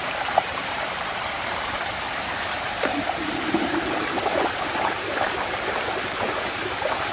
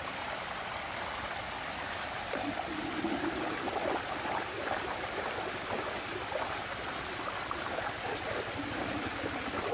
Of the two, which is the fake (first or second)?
first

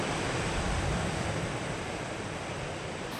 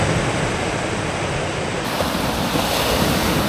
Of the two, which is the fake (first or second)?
first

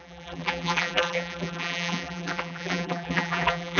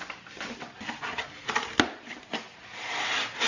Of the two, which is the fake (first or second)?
first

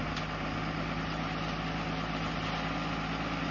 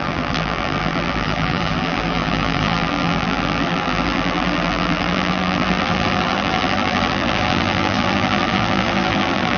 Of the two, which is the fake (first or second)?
second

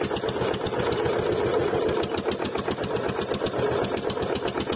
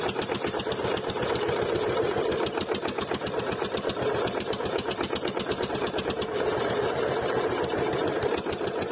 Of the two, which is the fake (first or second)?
second